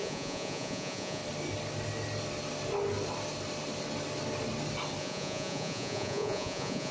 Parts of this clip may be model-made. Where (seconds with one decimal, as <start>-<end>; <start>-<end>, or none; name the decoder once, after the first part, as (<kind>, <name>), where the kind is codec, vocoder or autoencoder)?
0.0-1.2 (vocoder, Vocos); 5.0-6.9

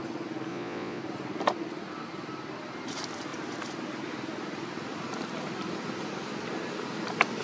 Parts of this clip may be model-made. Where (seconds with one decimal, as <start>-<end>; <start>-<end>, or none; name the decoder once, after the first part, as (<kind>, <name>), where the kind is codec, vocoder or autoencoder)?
0.5-1.0 (vocoder, Vocos)

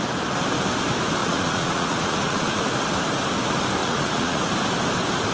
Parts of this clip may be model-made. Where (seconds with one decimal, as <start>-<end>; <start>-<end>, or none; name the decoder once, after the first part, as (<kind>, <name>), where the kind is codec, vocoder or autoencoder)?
1.2-2.6 (vocoder, Vocos); 3.8-4.4

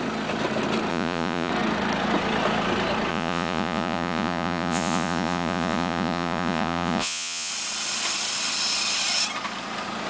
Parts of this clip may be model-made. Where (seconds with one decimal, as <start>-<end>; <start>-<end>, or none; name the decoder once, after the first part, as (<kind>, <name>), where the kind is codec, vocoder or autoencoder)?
0.9-1.5 (vocoder, Vocos); 3.1-7.5

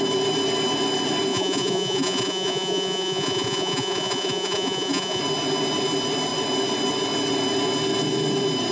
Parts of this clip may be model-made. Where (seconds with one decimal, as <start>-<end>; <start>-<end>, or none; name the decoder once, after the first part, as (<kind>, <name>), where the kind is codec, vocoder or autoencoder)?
1.3-5.2 (vocoder, Vocos)

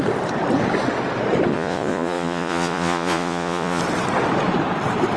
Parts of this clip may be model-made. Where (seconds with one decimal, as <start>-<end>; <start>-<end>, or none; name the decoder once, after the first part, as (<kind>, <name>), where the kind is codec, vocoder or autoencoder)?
1.5-3.8 (vocoder, Vocos)

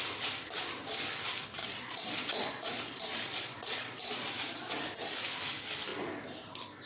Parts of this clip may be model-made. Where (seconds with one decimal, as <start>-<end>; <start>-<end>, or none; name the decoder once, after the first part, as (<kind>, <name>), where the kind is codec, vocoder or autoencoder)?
1.6-4.7 (vocoder, Vocos)